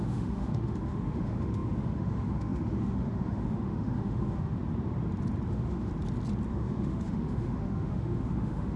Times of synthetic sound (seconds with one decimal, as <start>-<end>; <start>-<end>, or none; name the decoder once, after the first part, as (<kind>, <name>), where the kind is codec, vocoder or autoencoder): 0.0-4.6 (autoencoder, DAC-VAE); 5.5-5.9; 6.5-8.8

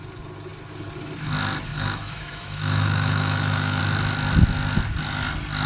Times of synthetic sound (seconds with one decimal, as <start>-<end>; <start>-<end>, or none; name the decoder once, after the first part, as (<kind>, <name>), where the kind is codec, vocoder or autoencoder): 1.7-3.8 (autoencoder, DAC-VAE)

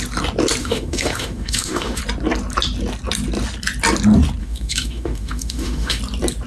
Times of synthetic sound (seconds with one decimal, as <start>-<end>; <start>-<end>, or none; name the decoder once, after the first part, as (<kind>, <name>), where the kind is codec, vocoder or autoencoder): 0.6-2.0 (autoencoder, DAC-VAE); 4.4-6.0